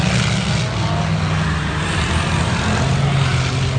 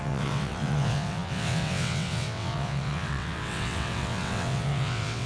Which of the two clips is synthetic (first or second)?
second